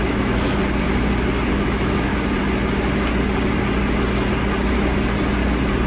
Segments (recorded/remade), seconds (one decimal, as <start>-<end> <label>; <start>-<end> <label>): 0.0-0.6 remade; 0.6-1.5 recorded; 1.5-2.1 remade; 2.1-5.9 recorded